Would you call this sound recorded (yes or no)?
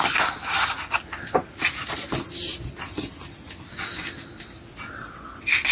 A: yes